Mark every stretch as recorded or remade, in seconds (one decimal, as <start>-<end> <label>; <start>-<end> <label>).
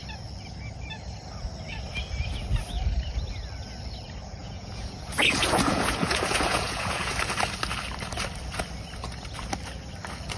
0.0-4.4 recorded; 4.4-7.1 remade; 7.1-10.4 recorded